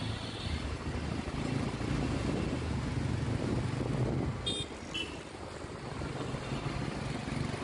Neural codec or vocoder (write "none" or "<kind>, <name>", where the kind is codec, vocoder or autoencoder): none